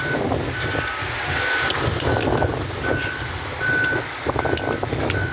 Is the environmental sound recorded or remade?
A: recorded